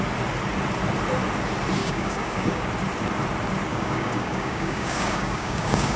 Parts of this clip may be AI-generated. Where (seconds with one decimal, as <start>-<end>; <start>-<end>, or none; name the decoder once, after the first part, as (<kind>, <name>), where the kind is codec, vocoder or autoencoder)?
1.8-2.7 (codec, DAC); 3.7-6.0